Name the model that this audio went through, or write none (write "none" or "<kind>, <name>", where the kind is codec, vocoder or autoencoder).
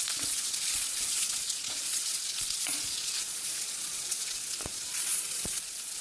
vocoder, Vocos